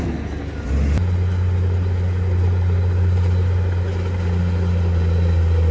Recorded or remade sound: recorded